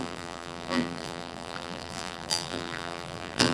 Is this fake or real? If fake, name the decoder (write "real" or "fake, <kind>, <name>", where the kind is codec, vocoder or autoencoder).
fake, vocoder, BigVGAN v2